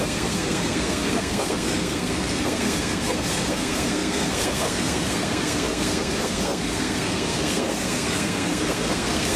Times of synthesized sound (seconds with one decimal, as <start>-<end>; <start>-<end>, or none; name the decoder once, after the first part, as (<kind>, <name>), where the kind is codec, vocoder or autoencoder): 0.0-9.4 (codec, SNAC)